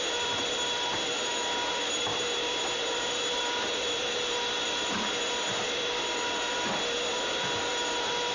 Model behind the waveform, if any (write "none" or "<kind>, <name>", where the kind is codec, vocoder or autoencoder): vocoder, BigVGAN v2